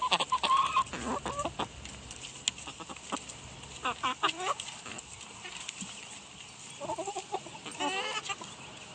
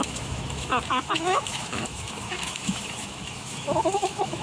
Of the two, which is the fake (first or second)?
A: second